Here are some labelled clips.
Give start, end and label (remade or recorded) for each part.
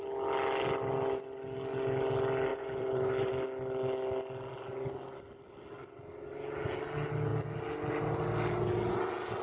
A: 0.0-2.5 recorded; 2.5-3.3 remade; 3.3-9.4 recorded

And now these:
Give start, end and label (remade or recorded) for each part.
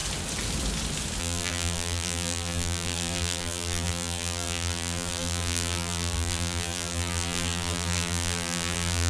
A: 0.0-1.2 recorded; 1.2-9.1 remade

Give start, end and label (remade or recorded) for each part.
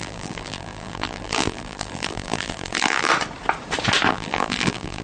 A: 0.0-3.1 remade; 3.1-4.1 recorded; 4.1-5.0 remade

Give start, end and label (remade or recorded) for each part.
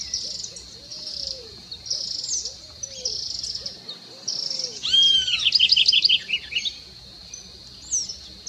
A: 0.0-0.9 recorded; 0.9-1.7 remade; 1.7-2.4 recorded; 2.4-3.4 remade; 3.4-8.5 recorded